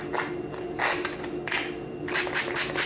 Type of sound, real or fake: real